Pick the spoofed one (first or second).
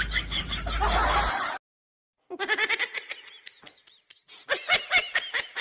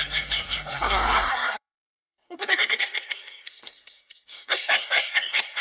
second